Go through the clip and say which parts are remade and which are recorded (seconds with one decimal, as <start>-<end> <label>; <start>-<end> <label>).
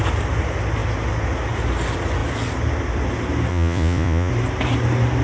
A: 0.0-3.5 recorded; 3.5-4.3 remade; 4.3-5.2 recorded